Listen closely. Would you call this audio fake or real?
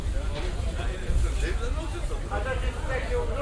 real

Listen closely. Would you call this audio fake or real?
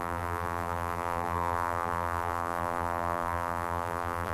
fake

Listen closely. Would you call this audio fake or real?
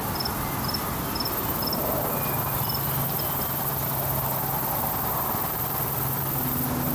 fake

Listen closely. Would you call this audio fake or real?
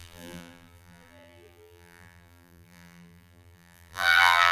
fake